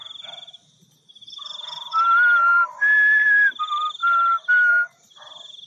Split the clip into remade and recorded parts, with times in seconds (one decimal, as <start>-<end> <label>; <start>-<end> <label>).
0.0-5.7 recorded